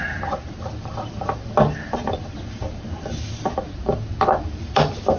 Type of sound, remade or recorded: remade